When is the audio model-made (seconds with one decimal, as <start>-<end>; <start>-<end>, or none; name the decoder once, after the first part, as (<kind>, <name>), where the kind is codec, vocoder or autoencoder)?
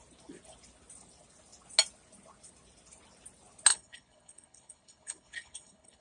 3.7-6.0 (codec, HILCodec)